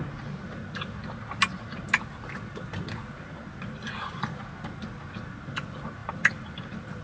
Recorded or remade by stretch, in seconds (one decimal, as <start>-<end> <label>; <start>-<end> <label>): 0.0-7.0 recorded